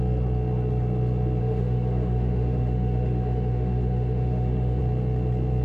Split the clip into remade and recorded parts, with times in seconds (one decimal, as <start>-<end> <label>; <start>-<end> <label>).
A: 0.0-1.4 recorded; 1.4-4.8 remade; 4.8-5.6 recorded